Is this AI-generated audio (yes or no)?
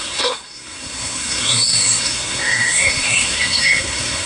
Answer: yes